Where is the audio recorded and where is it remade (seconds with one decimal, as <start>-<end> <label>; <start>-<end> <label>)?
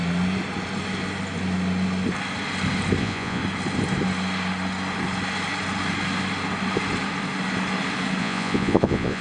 0.0-3.0 recorded; 3.0-3.4 remade; 3.4-8.2 recorded; 8.2-9.2 remade